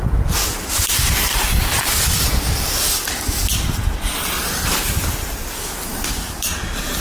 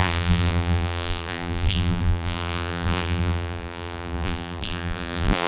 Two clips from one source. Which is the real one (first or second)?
first